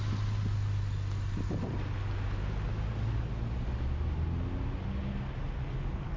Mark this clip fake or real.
real